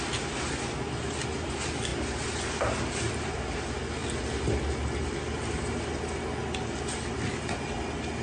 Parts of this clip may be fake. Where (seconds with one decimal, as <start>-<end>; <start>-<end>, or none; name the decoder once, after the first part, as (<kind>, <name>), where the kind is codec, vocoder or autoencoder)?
none